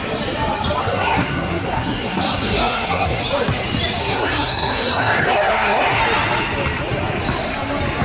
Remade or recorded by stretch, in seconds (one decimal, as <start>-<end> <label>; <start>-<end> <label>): 0.0-0.8 recorded; 0.8-3.2 remade; 3.2-4.0 recorded; 4.0-6.0 remade; 6.0-8.0 recorded